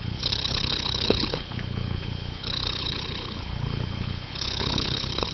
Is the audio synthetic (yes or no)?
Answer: yes